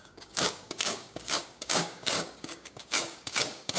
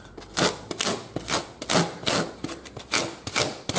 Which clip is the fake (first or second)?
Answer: first